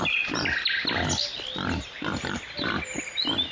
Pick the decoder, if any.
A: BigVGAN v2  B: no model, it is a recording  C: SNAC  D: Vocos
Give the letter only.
B